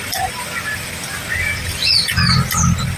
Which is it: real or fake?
real